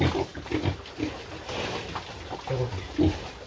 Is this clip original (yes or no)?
yes